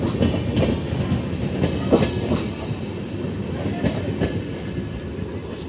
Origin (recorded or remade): recorded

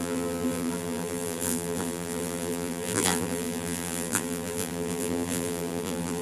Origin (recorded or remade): remade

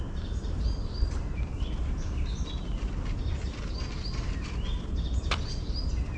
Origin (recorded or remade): recorded